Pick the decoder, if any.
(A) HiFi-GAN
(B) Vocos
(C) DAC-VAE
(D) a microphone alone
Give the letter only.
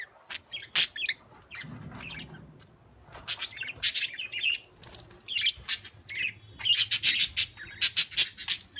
D